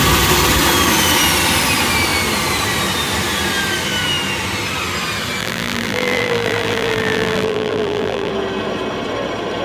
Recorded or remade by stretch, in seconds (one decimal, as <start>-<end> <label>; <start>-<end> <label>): 0.0-5.4 recorded; 5.4-8.3 remade; 8.3-9.6 recorded